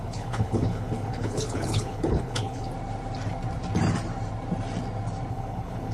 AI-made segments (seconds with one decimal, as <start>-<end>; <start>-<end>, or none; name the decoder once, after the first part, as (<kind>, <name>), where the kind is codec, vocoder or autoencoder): 0.0-2.7 (codec, HILCodec); 5.3-5.9